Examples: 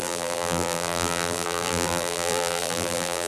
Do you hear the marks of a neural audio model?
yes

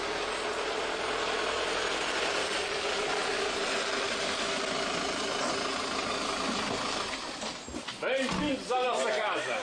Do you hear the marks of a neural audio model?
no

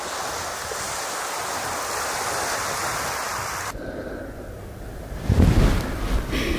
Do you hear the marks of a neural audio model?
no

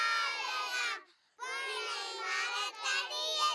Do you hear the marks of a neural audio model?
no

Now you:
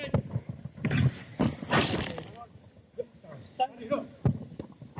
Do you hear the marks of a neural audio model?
no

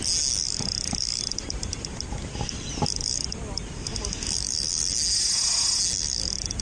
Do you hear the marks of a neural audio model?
no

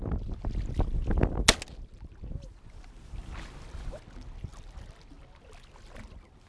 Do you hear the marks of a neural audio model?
no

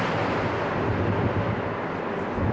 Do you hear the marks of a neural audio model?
no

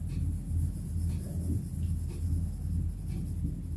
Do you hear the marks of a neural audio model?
no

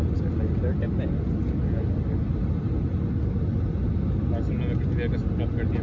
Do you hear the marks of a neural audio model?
no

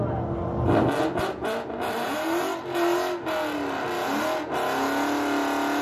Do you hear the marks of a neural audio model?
no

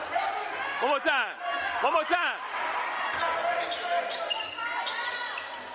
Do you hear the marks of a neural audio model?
no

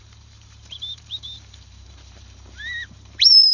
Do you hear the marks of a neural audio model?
yes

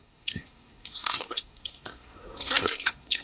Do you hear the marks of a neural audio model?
yes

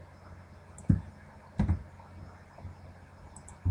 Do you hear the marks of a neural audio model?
no